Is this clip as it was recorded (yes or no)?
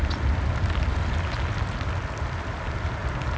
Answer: yes